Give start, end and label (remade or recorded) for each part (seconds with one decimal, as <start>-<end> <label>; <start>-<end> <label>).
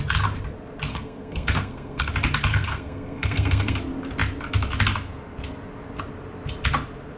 0.0-0.9 recorded; 0.9-2.1 remade; 2.1-2.5 recorded; 2.5-3.8 remade; 3.8-7.2 recorded